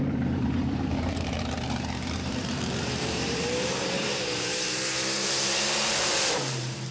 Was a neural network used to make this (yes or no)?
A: yes